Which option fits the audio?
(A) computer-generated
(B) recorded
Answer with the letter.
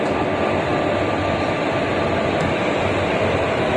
B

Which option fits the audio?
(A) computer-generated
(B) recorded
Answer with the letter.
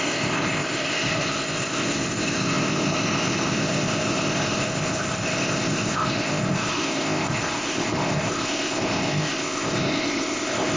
A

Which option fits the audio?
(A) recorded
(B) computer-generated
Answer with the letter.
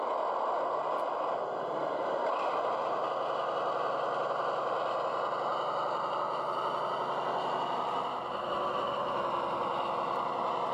A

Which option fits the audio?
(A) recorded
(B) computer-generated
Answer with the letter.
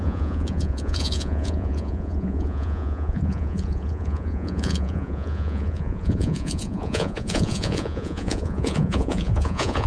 B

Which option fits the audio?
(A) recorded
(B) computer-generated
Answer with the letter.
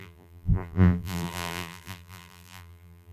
B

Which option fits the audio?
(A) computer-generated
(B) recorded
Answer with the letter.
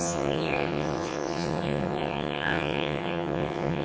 A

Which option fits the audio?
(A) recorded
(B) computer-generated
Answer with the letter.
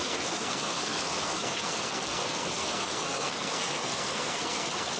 B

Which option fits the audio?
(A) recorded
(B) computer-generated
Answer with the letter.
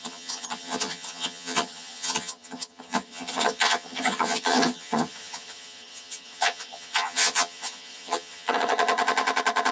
B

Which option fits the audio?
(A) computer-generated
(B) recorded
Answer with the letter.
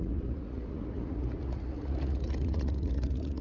A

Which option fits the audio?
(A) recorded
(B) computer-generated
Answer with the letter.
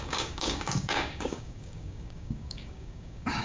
B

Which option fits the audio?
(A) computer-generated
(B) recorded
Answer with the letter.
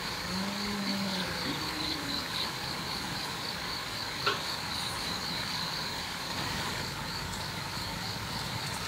A